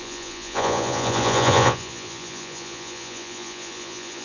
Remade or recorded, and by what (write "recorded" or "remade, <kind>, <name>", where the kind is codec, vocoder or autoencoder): remade, vocoder, Vocos